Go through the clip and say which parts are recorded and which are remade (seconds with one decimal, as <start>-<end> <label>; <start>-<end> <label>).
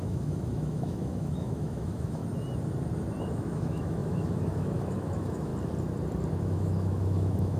0.0-2.2 remade; 2.2-3.2 recorded; 3.2-5.5 remade; 5.5-6.4 recorded; 6.4-7.6 remade